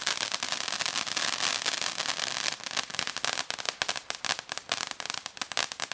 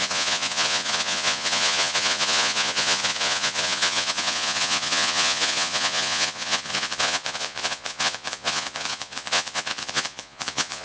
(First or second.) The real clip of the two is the first